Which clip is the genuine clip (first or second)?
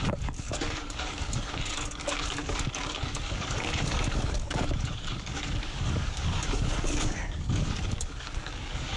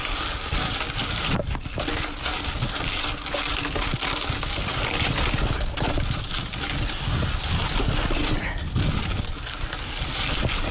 second